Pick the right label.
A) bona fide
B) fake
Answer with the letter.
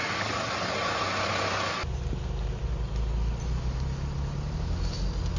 A